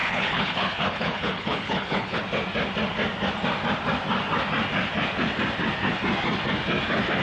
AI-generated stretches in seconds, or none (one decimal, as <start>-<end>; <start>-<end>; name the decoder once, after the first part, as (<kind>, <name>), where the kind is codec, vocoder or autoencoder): 0.0-2.2 (codec, HILCodec)